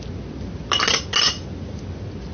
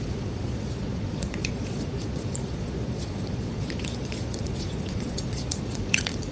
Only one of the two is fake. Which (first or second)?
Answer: second